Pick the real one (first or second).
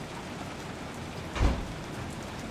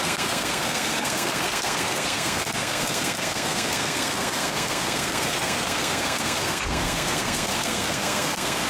first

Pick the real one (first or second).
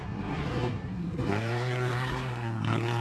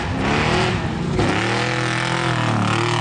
second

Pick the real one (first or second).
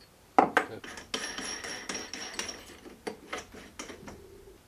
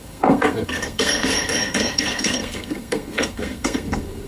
first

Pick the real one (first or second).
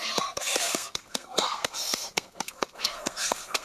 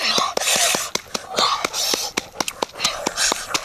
second